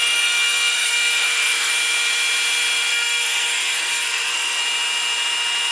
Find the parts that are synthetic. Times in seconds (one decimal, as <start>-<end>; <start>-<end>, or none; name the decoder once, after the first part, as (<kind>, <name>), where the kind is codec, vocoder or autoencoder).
0.0-1.7 (codec, SNAC); 2.9-4.6